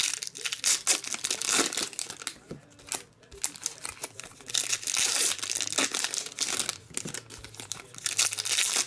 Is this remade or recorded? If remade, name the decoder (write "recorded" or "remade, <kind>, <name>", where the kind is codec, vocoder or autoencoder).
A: recorded